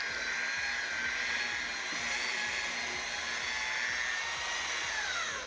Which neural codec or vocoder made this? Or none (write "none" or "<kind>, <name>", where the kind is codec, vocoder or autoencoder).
none